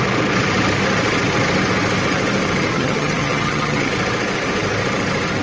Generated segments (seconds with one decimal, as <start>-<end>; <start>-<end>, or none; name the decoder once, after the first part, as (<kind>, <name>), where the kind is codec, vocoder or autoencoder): 2.7-3.9 (vocoder, HiFi-GAN)